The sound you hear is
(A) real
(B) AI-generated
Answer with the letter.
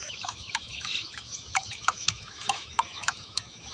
B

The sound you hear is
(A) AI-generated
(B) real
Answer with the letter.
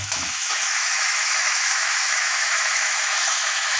A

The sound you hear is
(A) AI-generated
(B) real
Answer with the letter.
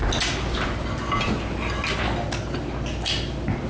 B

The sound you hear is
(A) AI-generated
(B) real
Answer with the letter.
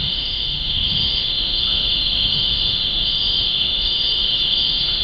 A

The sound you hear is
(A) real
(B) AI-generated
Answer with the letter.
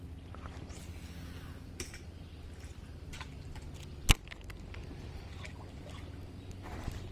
A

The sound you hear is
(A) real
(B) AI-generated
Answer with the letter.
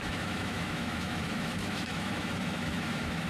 B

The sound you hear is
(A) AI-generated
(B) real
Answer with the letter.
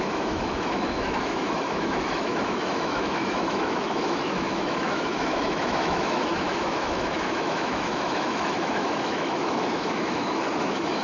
A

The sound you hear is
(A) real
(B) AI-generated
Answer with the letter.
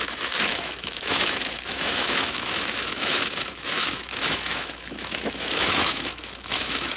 B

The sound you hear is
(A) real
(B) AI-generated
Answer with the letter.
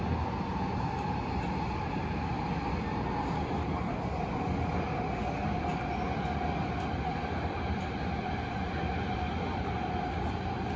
A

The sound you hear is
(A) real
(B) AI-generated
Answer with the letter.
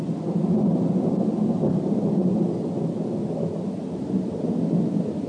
A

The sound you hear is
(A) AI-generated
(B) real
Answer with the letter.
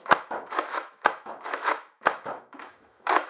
A